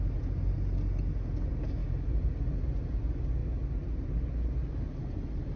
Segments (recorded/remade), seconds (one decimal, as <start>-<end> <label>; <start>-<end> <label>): 0.0-5.6 recorded